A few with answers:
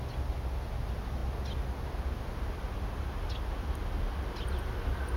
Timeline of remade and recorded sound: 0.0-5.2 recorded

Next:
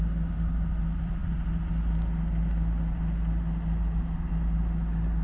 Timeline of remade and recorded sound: 0.0-5.2 recorded

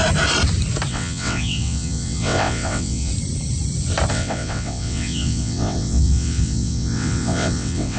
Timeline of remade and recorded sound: 0.0-0.9 recorded; 0.9-3.1 remade; 3.1-4.1 recorded; 4.1-8.0 remade